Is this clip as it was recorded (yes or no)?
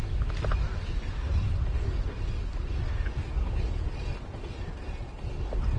yes